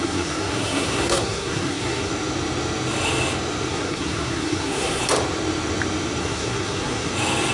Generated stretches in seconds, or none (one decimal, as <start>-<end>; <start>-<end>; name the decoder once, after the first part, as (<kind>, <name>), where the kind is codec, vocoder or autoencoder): 0.0-2.1 (codec, SNAC); 3.7-5.0; 6.2-7.1